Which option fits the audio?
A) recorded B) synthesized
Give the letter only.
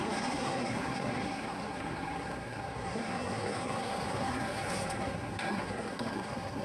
B